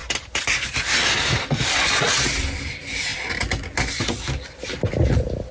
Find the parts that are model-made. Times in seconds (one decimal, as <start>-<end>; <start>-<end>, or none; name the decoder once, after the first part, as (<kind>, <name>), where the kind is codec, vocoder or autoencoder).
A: none

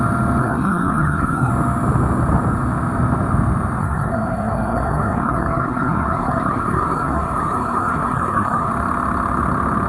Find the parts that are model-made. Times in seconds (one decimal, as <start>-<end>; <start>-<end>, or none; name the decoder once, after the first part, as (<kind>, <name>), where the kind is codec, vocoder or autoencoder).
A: 0.4-1.5 (codec, SNAC); 3.8-8.7

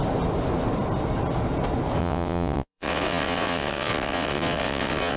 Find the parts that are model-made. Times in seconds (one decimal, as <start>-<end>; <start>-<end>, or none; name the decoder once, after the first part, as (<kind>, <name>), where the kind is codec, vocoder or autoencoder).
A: 2.0-5.2 (vocoder, WaveNeXt)